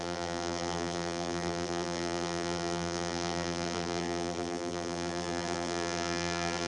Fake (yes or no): yes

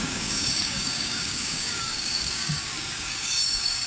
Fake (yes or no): yes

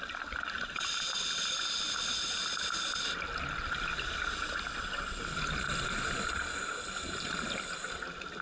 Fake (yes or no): no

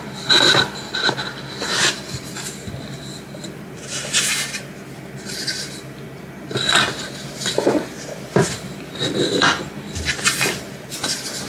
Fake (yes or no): no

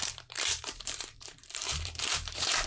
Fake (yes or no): yes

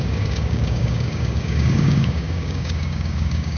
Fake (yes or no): yes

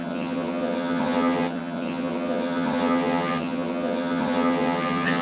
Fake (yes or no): yes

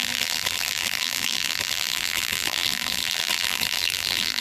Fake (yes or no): yes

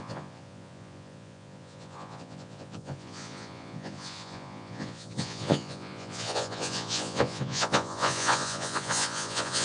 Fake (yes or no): yes